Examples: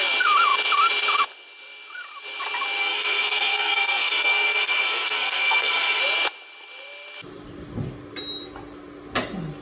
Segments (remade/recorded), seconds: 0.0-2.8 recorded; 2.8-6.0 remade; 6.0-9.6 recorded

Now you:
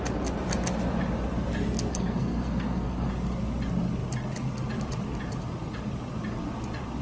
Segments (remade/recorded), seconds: 0.0-1.9 recorded; 1.9-3.1 remade; 3.1-7.0 recorded

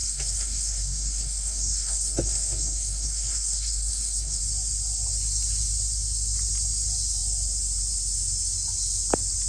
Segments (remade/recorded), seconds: 0.0-4.4 remade; 4.4-9.5 recorded

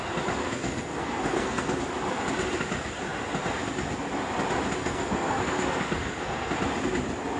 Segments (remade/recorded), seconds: 0.0-0.4 recorded; 0.4-1.8 remade; 1.8-4.8 recorded; 4.8-6.5 remade; 6.5-7.4 recorded